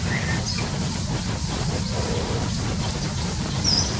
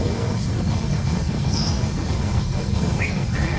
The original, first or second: first